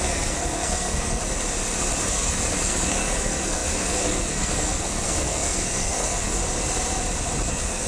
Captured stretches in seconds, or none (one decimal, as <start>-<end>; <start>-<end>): 1.2-2.1; 6.4-7.5